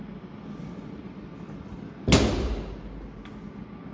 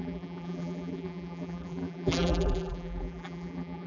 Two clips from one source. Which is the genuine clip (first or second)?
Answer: first